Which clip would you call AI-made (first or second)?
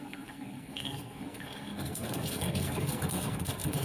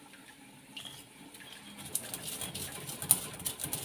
first